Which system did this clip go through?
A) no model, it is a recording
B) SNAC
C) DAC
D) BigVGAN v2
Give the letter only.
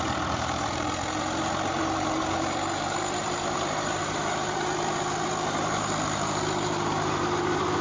D